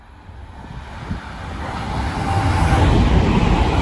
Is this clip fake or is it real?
real